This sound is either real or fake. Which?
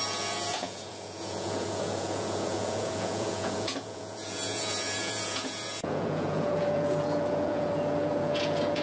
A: fake